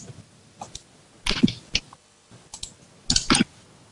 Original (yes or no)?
yes